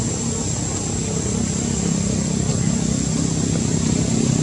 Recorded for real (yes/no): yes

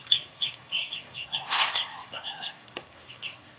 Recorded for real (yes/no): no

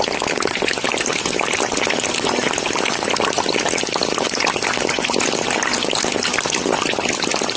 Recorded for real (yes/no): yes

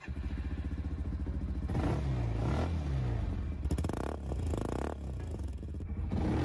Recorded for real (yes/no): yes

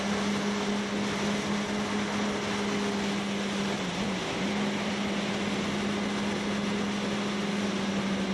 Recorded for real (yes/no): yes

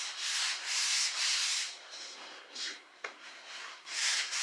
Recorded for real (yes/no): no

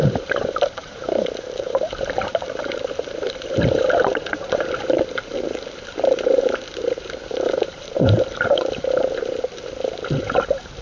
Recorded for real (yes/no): no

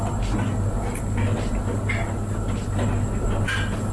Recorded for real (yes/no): yes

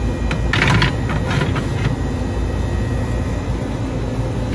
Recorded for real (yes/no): yes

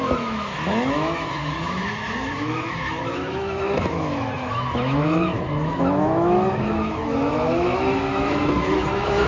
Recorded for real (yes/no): no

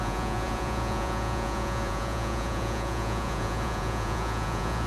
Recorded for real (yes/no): no